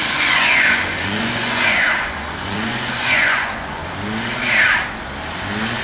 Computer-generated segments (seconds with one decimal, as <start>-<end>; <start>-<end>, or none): 0.0-3.8